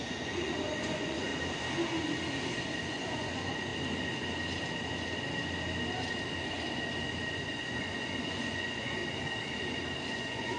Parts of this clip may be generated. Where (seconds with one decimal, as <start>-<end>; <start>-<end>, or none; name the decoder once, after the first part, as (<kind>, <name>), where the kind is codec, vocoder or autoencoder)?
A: 0.0-1.3 (vocoder, Vocos); 2.9-3.7; 7.3-9.0; 10.1-10.6